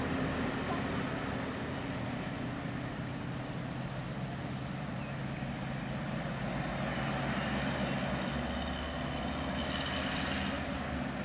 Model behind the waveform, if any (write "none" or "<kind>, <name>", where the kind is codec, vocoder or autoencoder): none